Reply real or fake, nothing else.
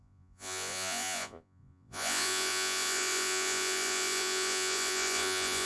fake